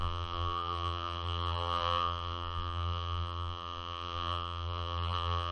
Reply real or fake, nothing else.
fake